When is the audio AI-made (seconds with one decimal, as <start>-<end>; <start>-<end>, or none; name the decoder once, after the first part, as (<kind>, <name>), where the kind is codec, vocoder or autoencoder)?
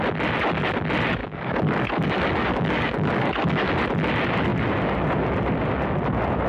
1.2-3.7 (codec, DAC)